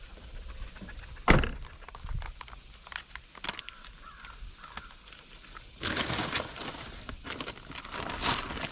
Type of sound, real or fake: real